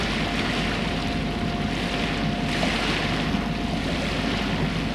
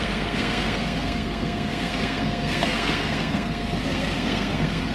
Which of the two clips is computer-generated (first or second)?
second